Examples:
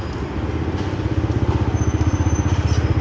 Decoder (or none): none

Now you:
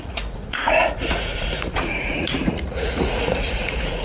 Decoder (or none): vocoder, Vocos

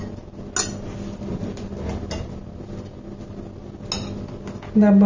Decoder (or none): none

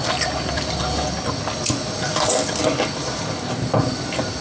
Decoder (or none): none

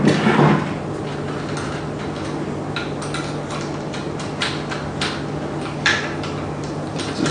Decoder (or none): none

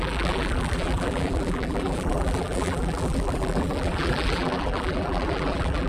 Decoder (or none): vocoder, BigVGAN v2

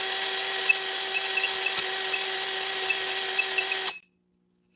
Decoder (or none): none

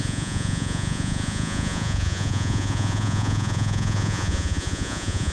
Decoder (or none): vocoder, Vocos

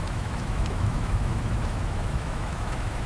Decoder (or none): autoencoder, DAC-VAE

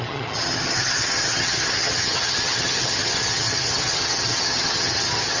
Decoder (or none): vocoder, HiFi-GAN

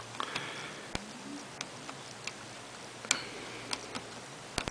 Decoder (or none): none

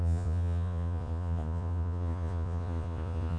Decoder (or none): vocoder, Vocos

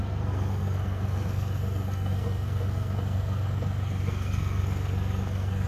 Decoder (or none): codec, SNAC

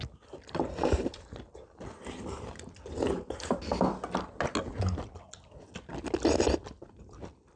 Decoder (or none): none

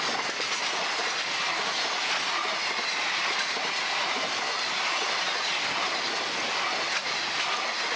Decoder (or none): none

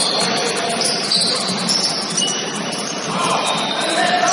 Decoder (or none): vocoder, BigVGAN v2